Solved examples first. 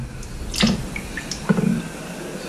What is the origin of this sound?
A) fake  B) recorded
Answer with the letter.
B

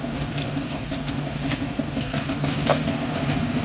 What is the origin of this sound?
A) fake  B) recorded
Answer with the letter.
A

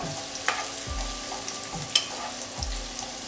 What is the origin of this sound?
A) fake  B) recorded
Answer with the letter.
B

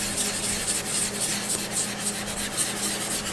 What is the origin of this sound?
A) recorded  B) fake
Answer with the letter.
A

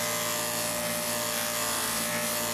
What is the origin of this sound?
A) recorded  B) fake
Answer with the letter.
A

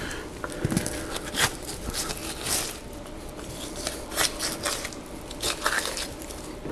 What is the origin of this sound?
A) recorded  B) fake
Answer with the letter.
A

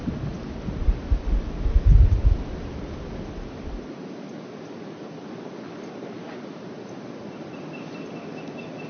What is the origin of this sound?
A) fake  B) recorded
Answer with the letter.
B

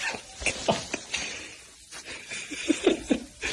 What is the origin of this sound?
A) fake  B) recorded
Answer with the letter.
B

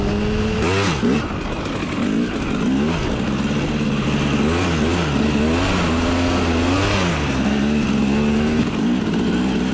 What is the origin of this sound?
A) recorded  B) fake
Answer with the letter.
A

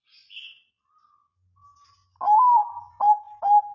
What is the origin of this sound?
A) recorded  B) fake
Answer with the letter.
A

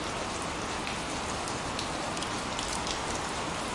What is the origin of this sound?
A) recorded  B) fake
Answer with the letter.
A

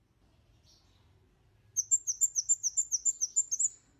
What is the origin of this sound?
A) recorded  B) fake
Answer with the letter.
A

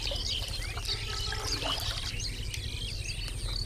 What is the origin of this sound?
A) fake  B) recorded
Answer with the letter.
B